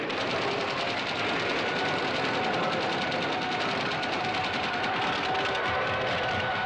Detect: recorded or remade recorded